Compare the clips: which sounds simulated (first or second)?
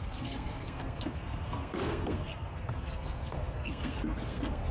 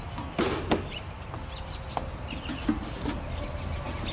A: first